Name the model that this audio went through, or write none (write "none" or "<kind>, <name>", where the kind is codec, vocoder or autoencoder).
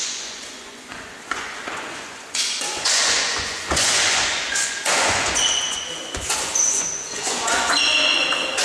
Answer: vocoder, Vocos